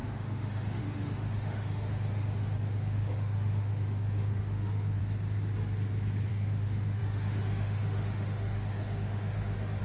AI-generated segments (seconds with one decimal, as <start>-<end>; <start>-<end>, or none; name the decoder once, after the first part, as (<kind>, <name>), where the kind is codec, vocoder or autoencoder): 0.0-5.0 (autoencoder, DAC-VAE); 6.3-9.8